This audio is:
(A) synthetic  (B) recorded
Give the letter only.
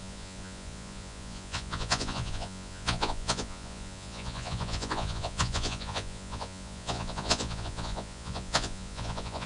A